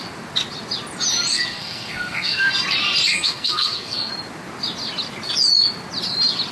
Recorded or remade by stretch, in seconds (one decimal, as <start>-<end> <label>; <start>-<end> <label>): 0.0-1.3 recorded; 1.3-2.5 remade; 2.5-3.1 recorded; 3.1-4.1 remade; 4.1-6.5 recorded